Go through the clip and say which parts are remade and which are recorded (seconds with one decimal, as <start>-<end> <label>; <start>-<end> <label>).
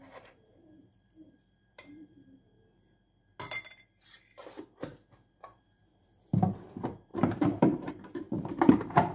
0.0-2.5 remade; 2.5-5.4 recorded; 5.4-9.1 remade